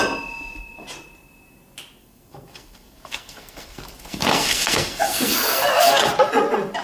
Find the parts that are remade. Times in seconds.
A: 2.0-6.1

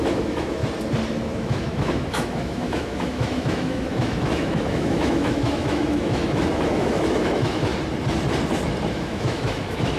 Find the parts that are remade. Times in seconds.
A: 0.0-0.6; 1.3-7.7; 8.9-10.0

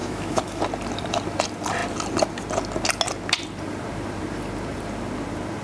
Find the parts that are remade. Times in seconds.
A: 0.0-0.6

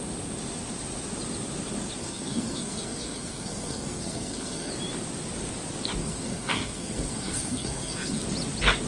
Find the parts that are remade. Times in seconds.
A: 2.0-4.7; 6.0-8.2

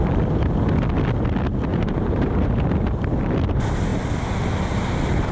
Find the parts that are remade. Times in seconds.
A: 1.7-2.6

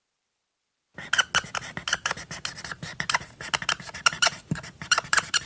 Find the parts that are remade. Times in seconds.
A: 0.0-0.4; 3.7-5.5